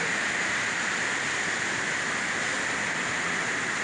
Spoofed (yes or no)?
no